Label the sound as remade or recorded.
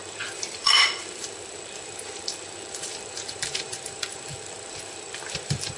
remade